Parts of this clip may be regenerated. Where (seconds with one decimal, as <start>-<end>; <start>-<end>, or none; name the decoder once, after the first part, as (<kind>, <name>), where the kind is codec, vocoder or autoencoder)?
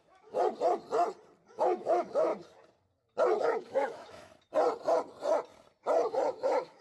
0.0-0.4 (autoencoder, DAC-VAE); 1.5-2.3; 3.4-4.3; 6.3-6.8